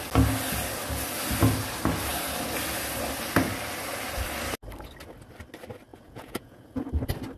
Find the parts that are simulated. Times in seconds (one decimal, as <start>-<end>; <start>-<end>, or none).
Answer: 5.9-6.9